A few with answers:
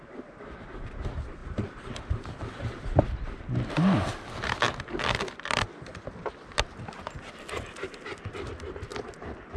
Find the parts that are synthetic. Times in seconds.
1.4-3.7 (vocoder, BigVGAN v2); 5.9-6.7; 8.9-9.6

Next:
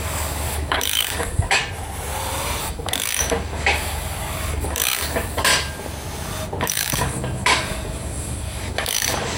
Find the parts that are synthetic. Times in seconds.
0.0-1.6 (codec, DAC); 2.6-5.5; 6.6-9.4

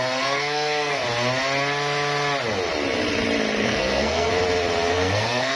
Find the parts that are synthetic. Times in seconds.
0.0-1.0 (codec, SNAC); 3.6-4.3; 4.9-5.6